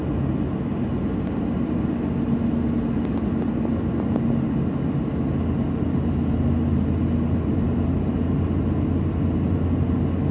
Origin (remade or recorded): recorded